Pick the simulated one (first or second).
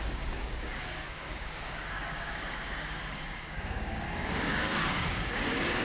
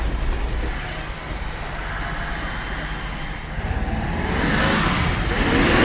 first